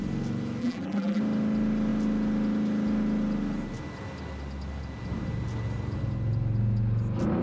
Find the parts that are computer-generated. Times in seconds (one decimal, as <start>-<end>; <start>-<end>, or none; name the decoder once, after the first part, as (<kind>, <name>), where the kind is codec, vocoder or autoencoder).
0.6-1.2 (vocoder, BigVGAN v2)